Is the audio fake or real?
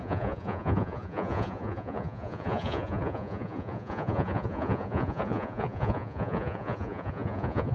fake